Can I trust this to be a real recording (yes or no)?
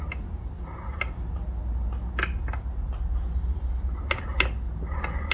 yes